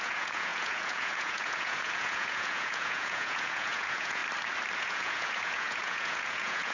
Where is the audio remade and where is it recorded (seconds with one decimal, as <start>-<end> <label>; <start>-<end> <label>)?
0.0-4.2 remade; 4.2-4.8 recorded; 4.8-6.7 remade